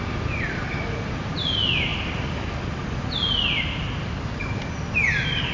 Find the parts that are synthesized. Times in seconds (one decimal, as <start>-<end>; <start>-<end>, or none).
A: none